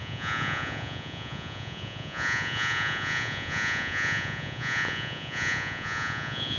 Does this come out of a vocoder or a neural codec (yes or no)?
yes